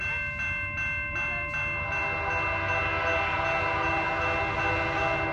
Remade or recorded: recorded